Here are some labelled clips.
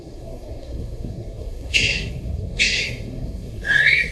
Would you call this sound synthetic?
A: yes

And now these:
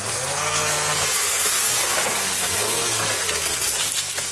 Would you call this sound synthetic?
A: yes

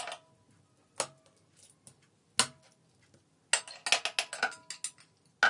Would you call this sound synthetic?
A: no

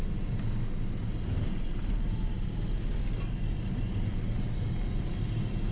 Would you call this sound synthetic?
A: no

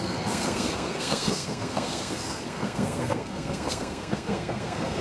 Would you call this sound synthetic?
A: yes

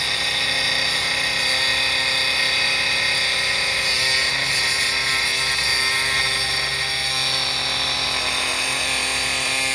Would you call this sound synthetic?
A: no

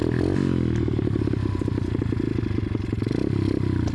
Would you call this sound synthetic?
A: no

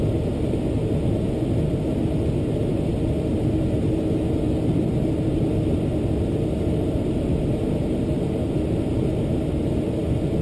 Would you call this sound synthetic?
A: no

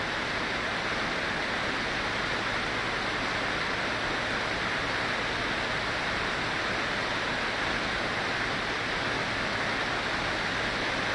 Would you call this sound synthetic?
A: no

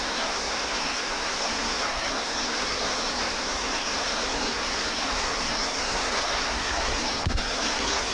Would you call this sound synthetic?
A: yes